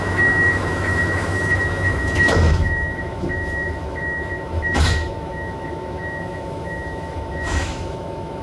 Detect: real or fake fake